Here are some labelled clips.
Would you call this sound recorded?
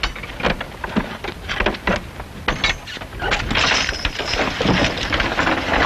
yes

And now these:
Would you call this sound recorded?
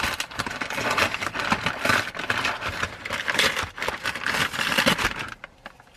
yes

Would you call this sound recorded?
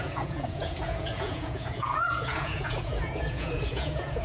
no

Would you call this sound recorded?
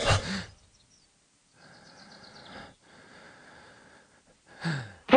yes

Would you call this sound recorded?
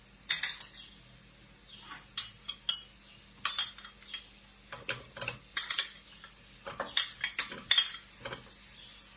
yes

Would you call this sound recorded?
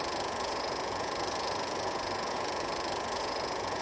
no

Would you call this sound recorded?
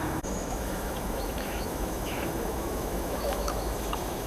no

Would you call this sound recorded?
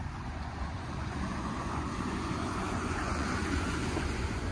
no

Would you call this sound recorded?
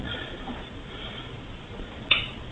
no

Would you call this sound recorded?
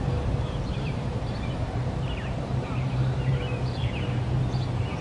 no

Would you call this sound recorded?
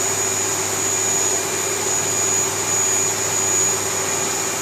yes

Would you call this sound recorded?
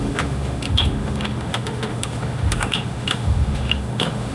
no